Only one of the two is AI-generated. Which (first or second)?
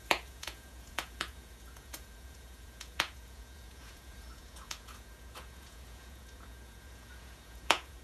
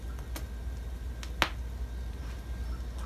first